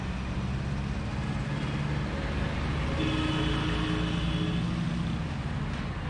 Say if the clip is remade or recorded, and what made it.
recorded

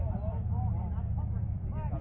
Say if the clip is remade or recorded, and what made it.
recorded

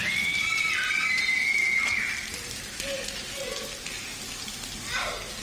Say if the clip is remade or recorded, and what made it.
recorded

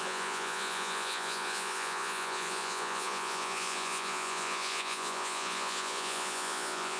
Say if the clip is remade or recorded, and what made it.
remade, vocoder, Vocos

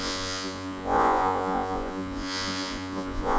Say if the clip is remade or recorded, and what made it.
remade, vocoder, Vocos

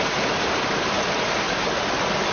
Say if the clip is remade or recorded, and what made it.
recorded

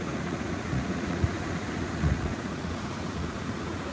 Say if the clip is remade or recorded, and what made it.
remade, vocoder, Vocos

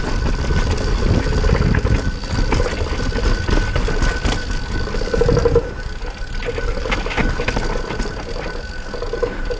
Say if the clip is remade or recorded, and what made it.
recorded